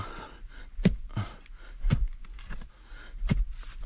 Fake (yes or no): no